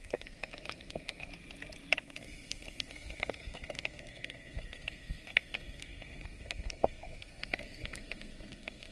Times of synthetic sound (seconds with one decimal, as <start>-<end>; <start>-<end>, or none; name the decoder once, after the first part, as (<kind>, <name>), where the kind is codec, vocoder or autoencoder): 0.0-1.3 (codec, SNAC); 2.0-8.9